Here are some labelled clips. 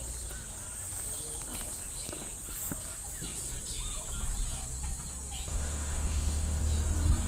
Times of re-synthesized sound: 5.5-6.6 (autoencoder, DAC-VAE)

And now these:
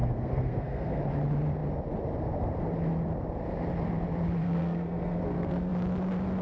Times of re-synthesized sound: 0.0-1.0 (codec, SNAC); 4.4-5.7

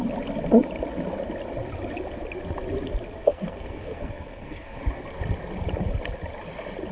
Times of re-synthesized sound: 3.2-4.8 (codec, SNAC)

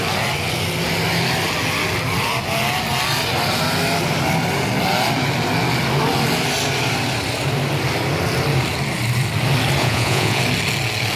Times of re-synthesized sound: 9.8-10.4 (vocoder, Vocos)

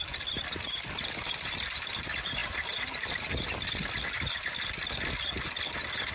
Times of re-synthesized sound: none

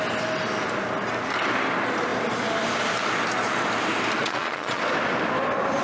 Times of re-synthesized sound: 4.2-4.8 (vocoder, Vocos)

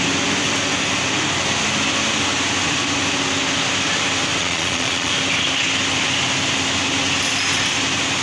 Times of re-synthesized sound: 4.4-5.1 (vocoder, Vocos)

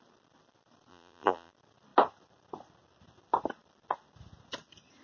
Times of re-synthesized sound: 0.9-1.5 (vocoder, BigVGAN v2)